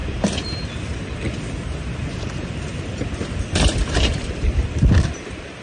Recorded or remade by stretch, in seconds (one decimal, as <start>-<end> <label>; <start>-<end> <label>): 0.0-3.4 recorded; 3.4-5.6 remade